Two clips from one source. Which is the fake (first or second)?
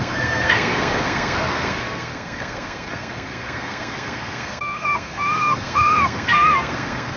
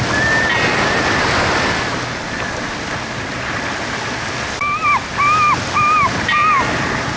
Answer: first